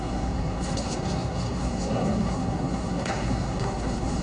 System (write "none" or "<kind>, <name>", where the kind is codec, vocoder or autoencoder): codec, SNAC